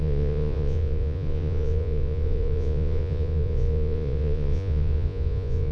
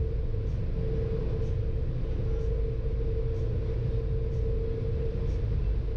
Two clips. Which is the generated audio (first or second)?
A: first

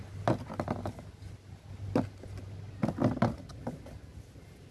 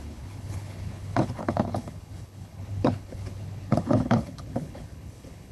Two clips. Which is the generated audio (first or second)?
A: second